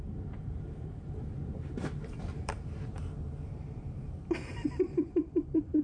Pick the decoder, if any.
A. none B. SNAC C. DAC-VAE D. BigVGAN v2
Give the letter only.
D